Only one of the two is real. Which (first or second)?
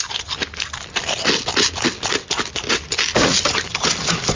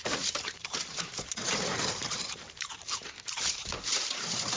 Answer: first